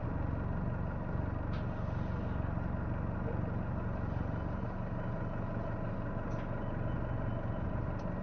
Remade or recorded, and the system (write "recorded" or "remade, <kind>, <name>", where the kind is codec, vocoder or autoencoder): recorded